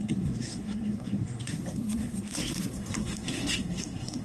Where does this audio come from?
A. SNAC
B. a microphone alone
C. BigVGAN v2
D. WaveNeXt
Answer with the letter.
A